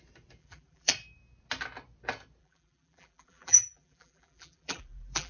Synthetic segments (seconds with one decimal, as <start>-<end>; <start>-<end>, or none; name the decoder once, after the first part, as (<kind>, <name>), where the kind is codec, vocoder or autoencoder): 0.4-0.9 (vocoder, BigVGAN v2); 2.4-5.3